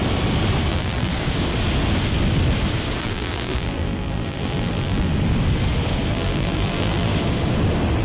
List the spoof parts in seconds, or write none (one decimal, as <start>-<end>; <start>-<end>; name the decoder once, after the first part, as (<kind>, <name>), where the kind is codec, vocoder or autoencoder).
0.7-1.1 (vocoder, BigVGAN v2); 3.0-5.1; 6.1-7.1